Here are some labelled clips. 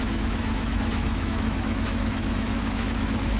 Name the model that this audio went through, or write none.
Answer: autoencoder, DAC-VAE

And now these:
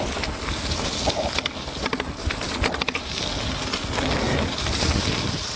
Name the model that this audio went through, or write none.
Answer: none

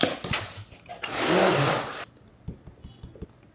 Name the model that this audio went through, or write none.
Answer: none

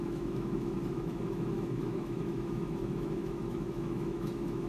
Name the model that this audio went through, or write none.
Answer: autoencoder, DAC-VAE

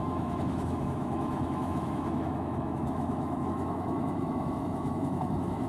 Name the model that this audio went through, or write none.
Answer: autoencoder, DAC-VAE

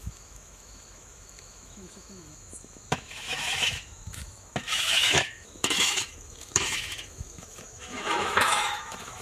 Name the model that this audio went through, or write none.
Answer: autoencoder, DAC-VAE